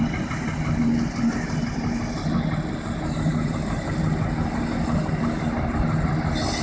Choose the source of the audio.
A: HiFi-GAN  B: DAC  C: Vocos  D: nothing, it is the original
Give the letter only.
D